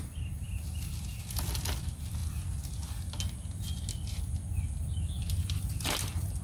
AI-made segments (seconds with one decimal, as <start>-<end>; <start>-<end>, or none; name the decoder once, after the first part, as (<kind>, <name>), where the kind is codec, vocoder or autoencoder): none